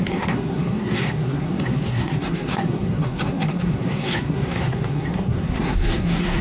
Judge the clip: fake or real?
fake